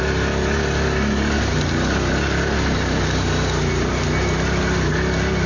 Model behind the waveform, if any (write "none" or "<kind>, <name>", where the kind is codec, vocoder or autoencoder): none